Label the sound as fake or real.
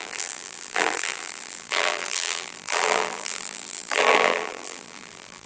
fake